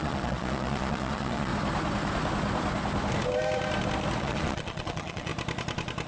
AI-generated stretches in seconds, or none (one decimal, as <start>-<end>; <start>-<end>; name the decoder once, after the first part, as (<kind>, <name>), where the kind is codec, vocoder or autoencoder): 0.0-1.5 (vocoder, Vocos); 4.2-5.3